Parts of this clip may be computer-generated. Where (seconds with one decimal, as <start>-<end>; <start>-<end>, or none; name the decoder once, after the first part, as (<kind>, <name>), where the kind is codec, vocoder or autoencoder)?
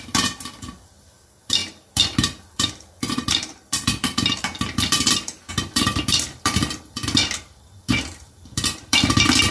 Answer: 0.0-9.5 (vocoder, BigVGAN v2)